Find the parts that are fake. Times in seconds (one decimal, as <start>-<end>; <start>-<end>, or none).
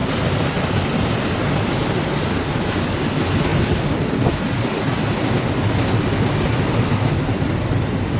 3.5-4.3